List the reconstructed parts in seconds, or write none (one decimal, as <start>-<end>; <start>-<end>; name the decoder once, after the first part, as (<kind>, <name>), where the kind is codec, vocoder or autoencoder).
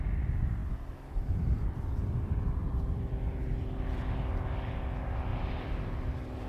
0.6-4.0 (vocoder, BigVGAN v2); 5.3-6.1